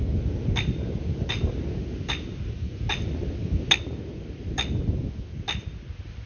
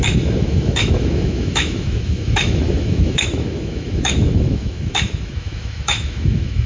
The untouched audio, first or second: first